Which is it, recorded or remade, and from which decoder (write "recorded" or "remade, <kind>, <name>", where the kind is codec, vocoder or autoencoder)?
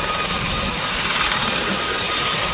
remade, vocoder, BigVGAN v2